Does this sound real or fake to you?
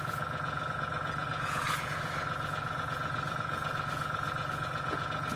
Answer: fake